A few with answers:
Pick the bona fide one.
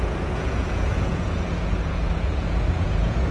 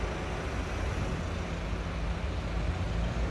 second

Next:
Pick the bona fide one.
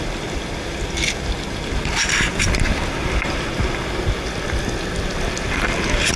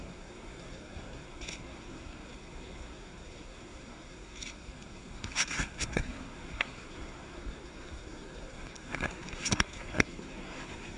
first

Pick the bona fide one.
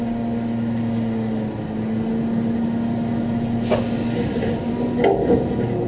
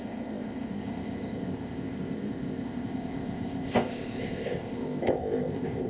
first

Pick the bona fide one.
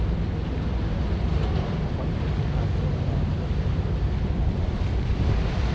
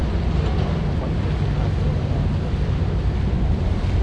second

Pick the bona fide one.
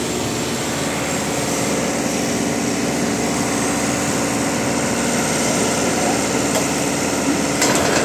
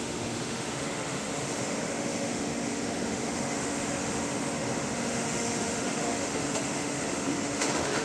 first